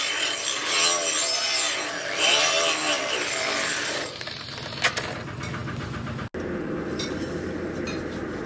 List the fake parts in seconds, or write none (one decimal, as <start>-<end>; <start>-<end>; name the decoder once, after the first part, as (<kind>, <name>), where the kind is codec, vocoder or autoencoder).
none

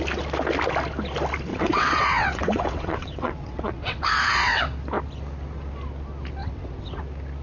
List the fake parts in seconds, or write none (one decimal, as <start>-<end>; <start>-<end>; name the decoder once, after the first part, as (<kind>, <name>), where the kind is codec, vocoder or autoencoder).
1.5-4.6 (vocoder, WaveNeXt); 6.4-7.0

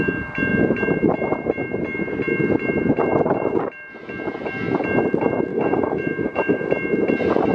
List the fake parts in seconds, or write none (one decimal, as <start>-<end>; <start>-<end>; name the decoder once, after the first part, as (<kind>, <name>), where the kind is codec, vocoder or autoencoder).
5.5-6.7 (autoencoder, DAC-VAE)

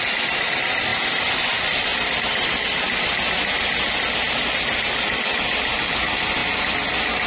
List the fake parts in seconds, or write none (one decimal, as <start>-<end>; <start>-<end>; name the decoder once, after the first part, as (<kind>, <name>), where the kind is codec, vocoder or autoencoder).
none